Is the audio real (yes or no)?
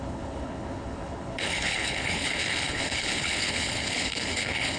no